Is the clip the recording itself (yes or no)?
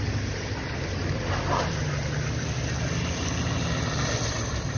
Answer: yes